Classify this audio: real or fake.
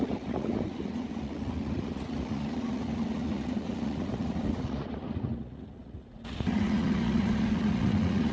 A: fake